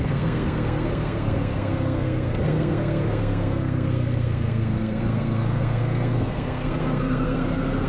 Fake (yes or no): yes